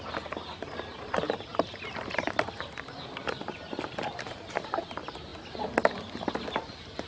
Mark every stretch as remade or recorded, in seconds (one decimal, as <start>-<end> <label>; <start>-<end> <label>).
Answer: 0.0-7.1 recorded

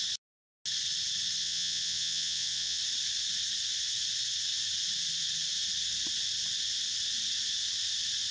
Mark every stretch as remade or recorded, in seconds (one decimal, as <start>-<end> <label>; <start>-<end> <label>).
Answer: 0.0-1.4 recorded; 1.4-2.8 remade; 2.8-8.3 recorded

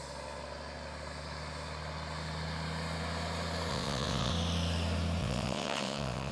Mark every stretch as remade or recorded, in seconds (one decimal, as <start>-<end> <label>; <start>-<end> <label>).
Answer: 0.0-3.7 recorded; 3.7-4.3 remade; 4.3-5.2 recorded; 5.2-6.3 remade

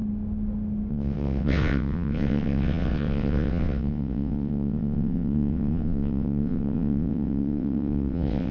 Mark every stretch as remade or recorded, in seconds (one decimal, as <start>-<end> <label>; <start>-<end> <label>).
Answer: 0.0-0.9 recorded; 0.9-8.5 remade

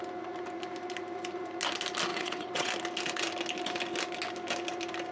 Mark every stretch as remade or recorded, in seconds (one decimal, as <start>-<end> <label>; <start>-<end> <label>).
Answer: 0.0-2.1 recorded; 2.1-2.7 remade; 2.7-5.1 recorded

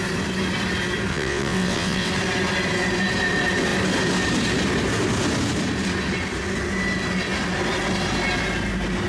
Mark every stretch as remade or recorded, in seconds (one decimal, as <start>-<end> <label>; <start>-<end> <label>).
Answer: 0.0-1.1 recorded; 1.1-2.1 remade; 2.1-9.1 recorded

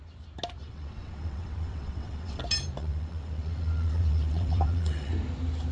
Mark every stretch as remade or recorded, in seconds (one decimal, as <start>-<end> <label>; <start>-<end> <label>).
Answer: 0.0-0.6 recorded; 0.6-2.4 remade; 2.4-2.8 recorded; 2.8-5.1 remade; 5.1-5.7 recorded